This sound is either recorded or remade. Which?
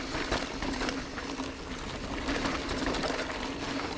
recorded